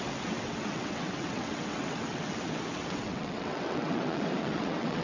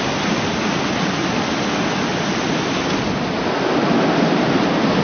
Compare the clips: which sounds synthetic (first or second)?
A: first